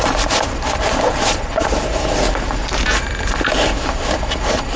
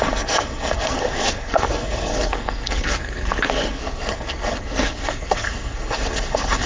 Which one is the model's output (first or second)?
second